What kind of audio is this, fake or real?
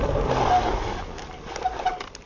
real